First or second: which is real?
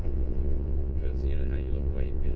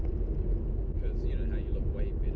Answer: second